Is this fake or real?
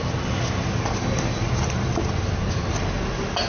real